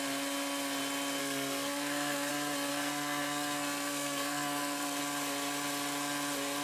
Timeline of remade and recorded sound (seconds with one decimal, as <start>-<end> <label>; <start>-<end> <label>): 0.0-1.2 recorded; 1.2-2.3 remade; 2.3-2.7 recorded; 2.7-5.0 remade; 5.0-6.6 recorded